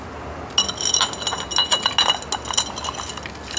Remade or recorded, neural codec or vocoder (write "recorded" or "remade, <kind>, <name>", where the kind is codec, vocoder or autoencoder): recorded